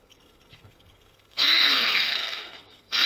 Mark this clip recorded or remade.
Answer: remade